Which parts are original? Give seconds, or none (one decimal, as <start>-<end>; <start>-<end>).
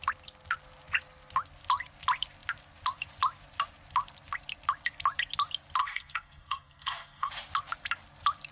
0.0-5.8; 7.3-8.5